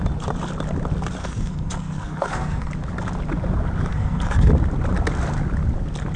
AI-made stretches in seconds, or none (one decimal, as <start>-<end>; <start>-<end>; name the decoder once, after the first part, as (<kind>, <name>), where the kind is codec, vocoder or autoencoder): 1.2-2.7 (codec, SNAC); 3.9-4.5

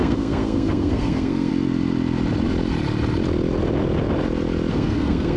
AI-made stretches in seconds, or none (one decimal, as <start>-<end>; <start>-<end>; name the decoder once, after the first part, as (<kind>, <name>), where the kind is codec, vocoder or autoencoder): 0.0-1.5 (codec, SNAC); 4.7-5.4